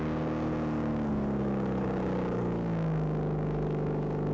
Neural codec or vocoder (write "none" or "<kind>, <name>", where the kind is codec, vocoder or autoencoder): codec, DAC